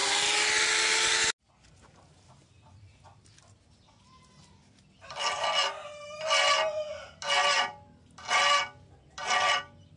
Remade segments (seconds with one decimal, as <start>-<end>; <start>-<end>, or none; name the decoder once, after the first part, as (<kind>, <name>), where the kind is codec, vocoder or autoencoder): none